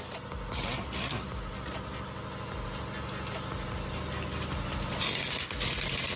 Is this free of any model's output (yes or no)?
yes